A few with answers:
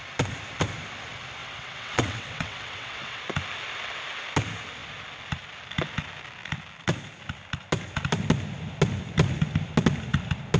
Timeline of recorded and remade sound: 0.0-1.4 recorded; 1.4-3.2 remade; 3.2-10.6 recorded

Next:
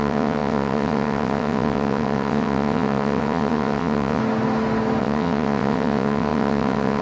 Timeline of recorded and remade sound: 0.0-4.2 remade; 4.2-5.0 recorded; 5.0-7.0 remade

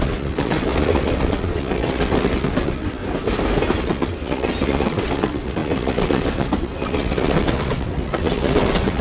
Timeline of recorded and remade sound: 0.0-3.0 remade; 3.0-3.8 recorded; 3.8-9.0 remade

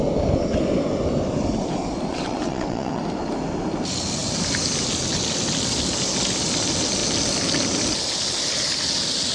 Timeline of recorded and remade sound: 0.0-2.1 recorded; 2.1-3.0 remade; 3.0-9.3 recorded